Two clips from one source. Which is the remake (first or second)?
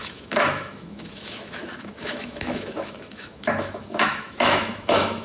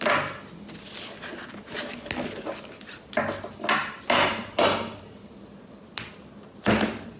first